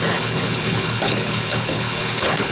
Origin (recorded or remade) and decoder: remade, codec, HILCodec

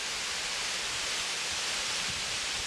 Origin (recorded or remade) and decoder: recorded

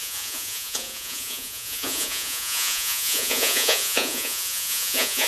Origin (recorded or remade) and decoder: remade, vocoder, Vocos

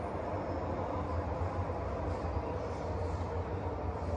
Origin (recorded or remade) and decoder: recorded